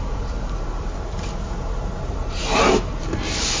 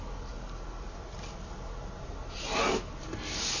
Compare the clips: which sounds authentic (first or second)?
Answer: second